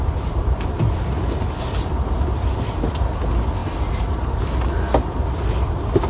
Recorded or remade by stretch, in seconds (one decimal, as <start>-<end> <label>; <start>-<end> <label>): 0.0-6.1 recorded